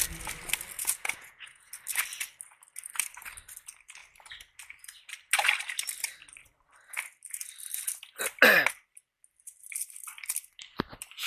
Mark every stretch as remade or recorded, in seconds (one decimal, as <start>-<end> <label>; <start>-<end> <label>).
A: 0.0-0.8 recorded; 0.8-1.7 remade; 1.7-11.3 recorded